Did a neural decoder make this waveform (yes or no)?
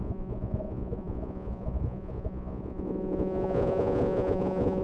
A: yes